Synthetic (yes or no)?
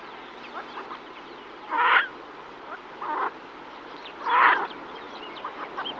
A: no